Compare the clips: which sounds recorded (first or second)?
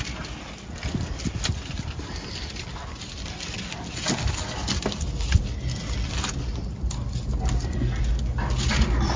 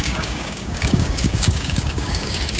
first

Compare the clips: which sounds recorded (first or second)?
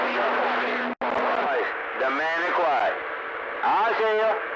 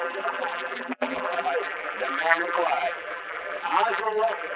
first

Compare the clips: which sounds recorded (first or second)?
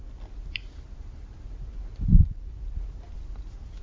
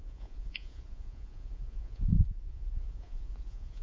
first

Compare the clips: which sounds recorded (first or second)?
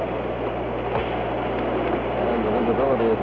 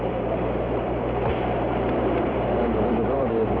first